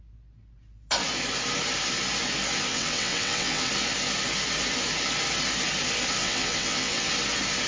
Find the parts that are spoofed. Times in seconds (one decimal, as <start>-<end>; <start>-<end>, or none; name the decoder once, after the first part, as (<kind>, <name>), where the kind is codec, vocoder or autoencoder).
2.7-3.7 (vocoder, WaveNeXt); 6.2-7.1